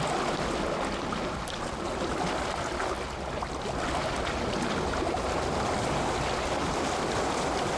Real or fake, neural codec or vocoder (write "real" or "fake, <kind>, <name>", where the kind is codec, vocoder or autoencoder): real